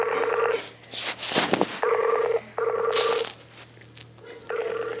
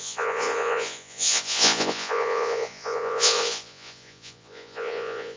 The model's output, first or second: second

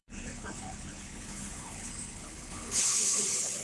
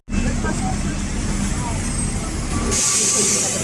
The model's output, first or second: first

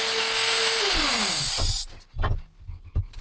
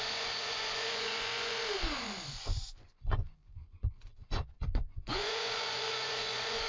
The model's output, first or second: second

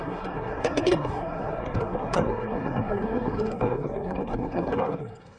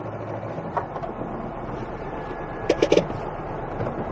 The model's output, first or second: first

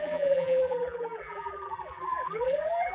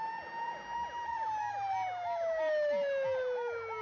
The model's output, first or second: first